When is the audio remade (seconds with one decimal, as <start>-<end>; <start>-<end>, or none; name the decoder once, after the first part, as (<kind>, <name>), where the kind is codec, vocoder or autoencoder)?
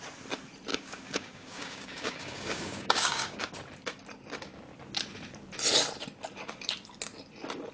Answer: 0.7-3.5 (codec, DAC)